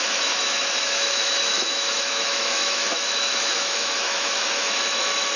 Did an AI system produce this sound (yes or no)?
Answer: yes